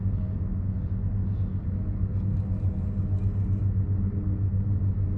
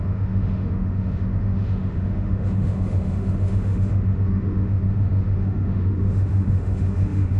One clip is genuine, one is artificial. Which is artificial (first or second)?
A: second